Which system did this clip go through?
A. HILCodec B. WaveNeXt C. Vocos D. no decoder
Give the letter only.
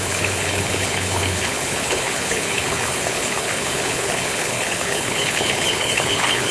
A